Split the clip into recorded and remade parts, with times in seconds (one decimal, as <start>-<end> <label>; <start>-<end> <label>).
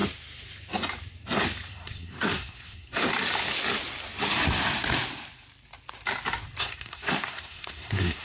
0.0-1.7 recorded; 1.7-3.1 remade; 3.1-6.6 recorded; 6.6-8.2 remade